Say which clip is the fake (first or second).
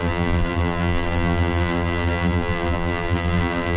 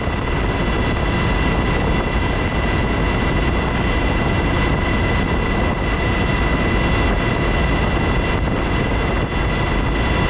first